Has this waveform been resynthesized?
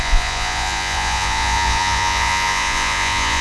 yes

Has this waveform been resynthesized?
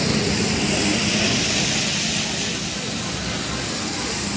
no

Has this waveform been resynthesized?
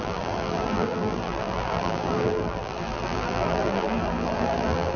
yes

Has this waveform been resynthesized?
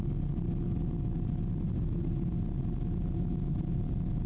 no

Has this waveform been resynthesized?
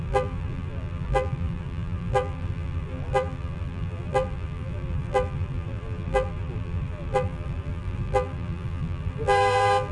yes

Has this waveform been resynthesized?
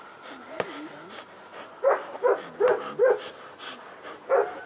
no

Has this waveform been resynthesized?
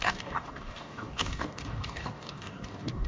yes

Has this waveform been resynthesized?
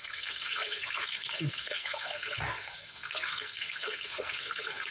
yes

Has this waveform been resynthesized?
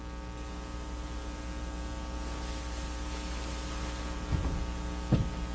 no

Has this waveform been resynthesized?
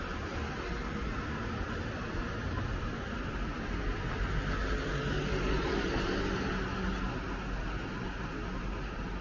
no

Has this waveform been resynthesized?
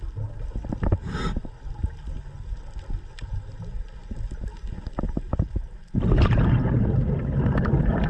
no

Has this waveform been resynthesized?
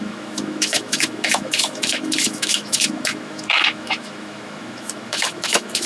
yes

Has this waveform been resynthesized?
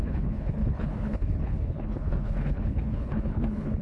yes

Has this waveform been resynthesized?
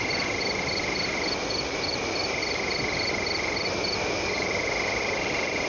no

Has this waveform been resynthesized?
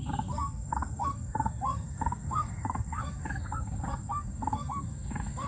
yes